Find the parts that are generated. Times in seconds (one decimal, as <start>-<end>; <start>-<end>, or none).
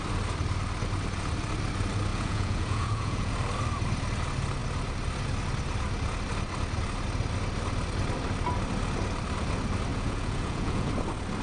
2.1-3.3; 9.9-10.9